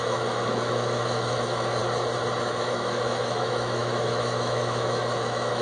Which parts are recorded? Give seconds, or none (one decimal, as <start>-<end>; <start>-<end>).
1.8-2.4